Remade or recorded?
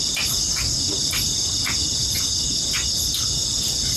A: recorded